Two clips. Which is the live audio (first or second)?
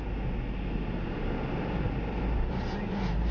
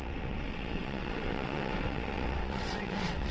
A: first